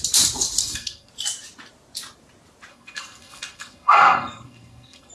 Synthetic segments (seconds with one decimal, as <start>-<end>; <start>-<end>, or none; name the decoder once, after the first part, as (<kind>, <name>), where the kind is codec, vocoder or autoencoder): 0.6-1.1 (codec, SNAC); 2.7-5.1

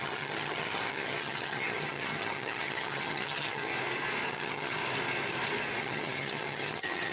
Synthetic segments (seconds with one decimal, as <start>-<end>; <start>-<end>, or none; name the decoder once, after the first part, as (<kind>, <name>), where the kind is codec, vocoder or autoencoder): 0.0-3.7 (vocoder, HiFi-GAN); 4.3-4.8; 5.8-7.1

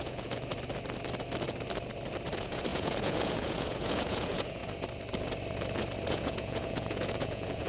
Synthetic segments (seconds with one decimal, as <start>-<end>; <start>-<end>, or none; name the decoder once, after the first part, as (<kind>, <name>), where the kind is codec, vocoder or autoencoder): 0.0-0.5 (vocoder, Vocos); 2.3-4.6; 6.1-7.7

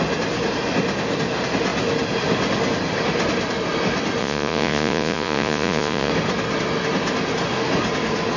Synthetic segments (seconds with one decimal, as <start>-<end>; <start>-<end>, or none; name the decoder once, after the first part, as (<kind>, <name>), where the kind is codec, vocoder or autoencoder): 4.2-6.1 (vocoder, Vocos)

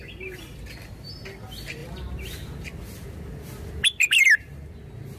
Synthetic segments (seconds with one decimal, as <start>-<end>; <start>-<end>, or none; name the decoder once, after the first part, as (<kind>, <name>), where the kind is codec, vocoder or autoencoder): none

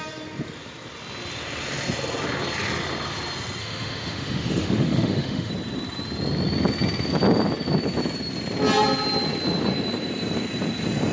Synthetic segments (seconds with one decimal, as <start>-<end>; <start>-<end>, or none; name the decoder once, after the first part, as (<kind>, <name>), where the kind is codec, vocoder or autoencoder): 3.6-5.5 (autoencoder, DAC-VAE)

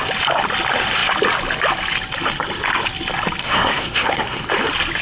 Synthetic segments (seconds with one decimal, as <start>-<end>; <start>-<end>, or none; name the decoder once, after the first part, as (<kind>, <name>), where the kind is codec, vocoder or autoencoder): 3.4-4.5 (codec, SNAC)